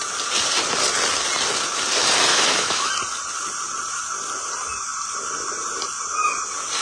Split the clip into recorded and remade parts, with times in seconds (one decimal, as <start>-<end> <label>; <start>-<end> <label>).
0.0-2.3 recorded; 2.3-2.9 remade; 2.9-6.8 recorded

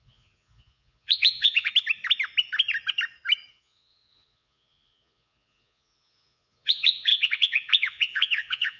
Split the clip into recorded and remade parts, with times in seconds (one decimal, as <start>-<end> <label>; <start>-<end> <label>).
0.0-1.7 remade; 1.7-3.5 recorded; 3.5-8.8 remade

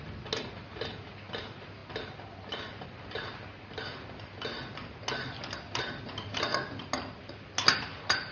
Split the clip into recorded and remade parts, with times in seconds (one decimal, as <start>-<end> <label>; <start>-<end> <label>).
0.0-8.3 recorded

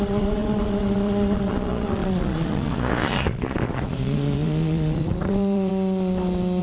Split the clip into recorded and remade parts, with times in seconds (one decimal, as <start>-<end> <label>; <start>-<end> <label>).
0.0-5.7 remade; 5.7-6.6 recorded

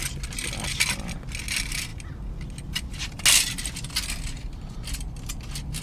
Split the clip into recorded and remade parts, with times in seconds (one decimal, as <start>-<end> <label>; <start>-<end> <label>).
0.0-5.8 recorded

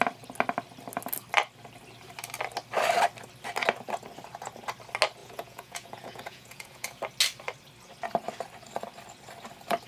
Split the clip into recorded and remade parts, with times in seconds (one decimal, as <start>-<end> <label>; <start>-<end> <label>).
0.0-5.2 recorded; 5.2-7.0 remade; 7.0-9.9 recorded

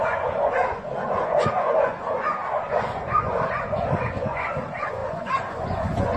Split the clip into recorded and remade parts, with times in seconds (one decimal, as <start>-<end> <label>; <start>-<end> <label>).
0.0-6.2 remade